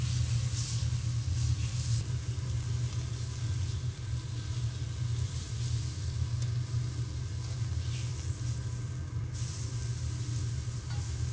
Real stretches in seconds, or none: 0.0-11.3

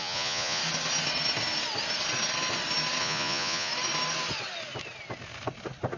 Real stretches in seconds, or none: 0.6-3.0; 3.7-6.0

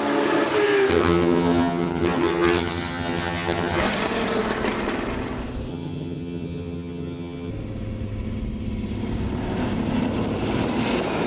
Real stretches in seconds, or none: 0.0-0.9; 3.8-5.7; 7.5-11.3

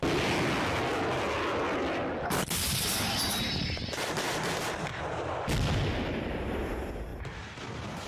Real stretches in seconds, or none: 0.0-8.1

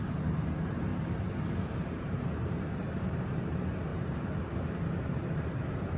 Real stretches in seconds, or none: 0.0-0.9; 2.6-3.9

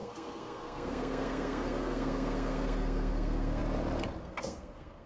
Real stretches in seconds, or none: 3.6-4.2